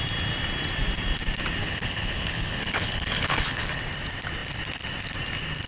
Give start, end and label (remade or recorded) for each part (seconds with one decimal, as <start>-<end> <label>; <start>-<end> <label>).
0.0-1.6 recorded; 1.6-3.8 remade; 3.8-5.7 recorded